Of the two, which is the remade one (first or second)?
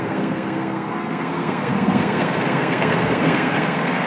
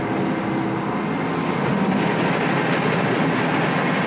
first